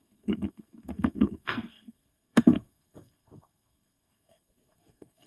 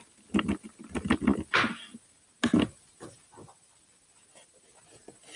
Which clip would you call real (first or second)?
second